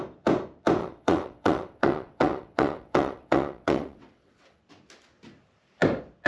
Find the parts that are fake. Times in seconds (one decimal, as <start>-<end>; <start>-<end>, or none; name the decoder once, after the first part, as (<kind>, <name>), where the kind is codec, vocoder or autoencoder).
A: 0.8-4.6 (vocoder, WaveNeXt)